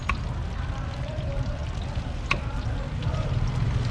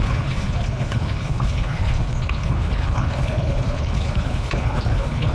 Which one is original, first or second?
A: first